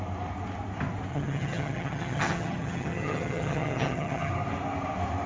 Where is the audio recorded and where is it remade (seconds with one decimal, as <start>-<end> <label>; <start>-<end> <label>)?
0.0-1.1 recorded; 1.1-4.3 remade; 4.3-5.3 recorded